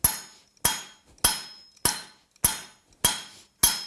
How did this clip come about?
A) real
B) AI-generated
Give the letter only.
A